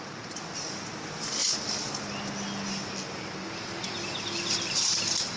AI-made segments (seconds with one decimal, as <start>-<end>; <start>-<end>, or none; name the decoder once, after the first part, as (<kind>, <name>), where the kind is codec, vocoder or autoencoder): none